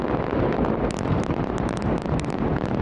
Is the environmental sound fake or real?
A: real